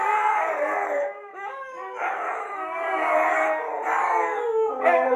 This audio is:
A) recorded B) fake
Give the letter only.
B